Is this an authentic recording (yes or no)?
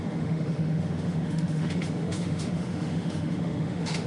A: no